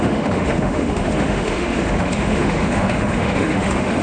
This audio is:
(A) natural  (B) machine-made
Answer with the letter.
B